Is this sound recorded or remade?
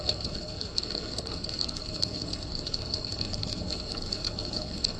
remade